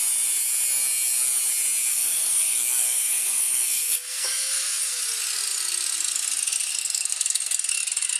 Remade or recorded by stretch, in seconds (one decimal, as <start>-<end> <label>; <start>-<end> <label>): 0.0-1.9 recorded; 1.9-5.0 remade; 5.0-6.8 recorded; 6.8-7.7 remade; 7.7-8.2 recorded